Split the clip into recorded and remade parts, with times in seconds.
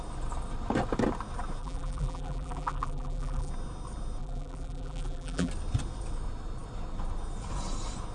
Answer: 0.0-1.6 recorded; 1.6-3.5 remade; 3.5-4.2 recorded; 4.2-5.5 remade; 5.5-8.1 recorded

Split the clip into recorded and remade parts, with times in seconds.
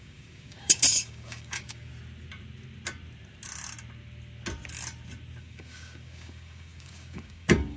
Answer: 0.0-1.9 remade; 1.9-5.4 recorded; 5.4-7.8 remade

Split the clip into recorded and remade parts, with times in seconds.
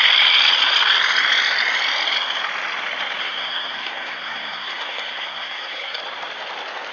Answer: 0.0-3.2 recorded; 3.2-6.0 remade; 6.0-6.9 recorded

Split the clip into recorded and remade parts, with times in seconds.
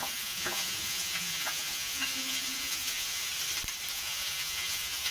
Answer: 0.0-3.3 remade; 3.3-3.9 recorded; 3.9-5.1 remade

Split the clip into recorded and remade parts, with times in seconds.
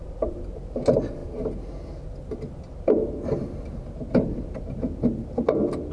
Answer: 0.0-5.9 recorded